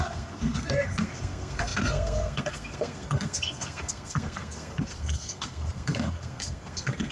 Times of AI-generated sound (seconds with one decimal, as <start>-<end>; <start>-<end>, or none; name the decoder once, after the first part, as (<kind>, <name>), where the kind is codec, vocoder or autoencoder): 0.0-7.1 (codec, SNAC)